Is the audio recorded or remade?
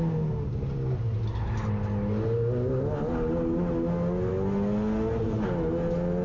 recorded